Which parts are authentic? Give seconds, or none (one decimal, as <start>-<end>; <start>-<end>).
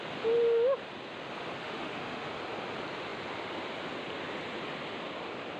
0.0-1.6; 2.3-5.6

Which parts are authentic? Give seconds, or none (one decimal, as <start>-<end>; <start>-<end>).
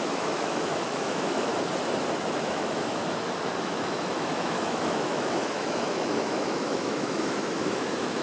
1.5-2.4; 3.0-3.6